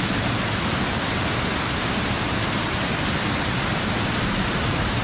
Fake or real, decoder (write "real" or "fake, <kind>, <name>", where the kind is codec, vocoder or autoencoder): real